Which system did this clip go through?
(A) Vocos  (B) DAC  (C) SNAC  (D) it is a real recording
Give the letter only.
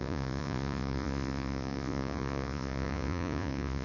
A